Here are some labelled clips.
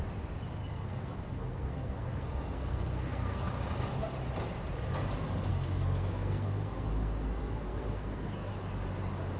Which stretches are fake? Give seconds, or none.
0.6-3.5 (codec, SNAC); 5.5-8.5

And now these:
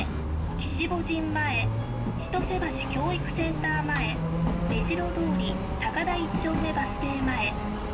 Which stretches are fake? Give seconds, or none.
none